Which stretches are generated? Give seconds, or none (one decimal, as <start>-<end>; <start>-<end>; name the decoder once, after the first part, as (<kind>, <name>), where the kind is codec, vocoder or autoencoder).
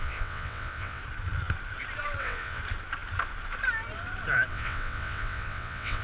0.0-1.0 (vocoder, WaveNeXt); 2.2-2.6; 4.5-6.0